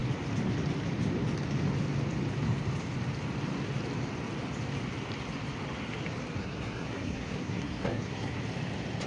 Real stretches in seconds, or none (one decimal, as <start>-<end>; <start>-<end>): 0.0-6.4; 8.4-9.1